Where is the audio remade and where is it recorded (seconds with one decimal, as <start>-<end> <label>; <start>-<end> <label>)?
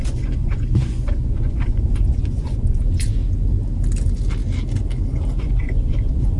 0.0-3.2 remade; 3.2-5.4 recorded; 5.4-6.4 remade